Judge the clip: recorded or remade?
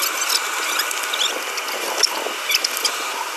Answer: recorded